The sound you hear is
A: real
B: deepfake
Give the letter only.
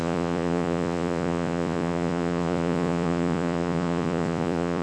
B